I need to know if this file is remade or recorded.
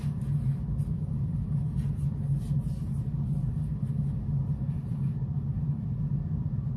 remade